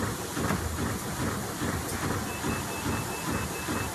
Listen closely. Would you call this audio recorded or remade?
remade